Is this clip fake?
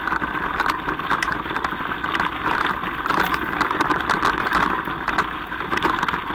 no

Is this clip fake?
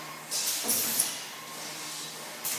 no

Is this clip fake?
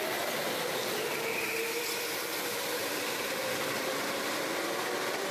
yes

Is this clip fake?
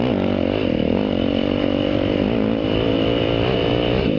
yes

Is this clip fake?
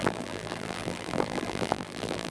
yes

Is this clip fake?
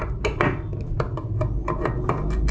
no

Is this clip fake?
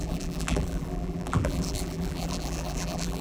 yes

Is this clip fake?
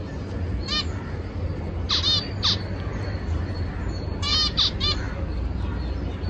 no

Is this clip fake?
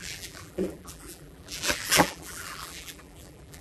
yes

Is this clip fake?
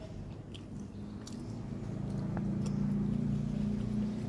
no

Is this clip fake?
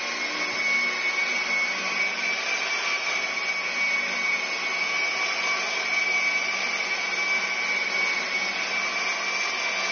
no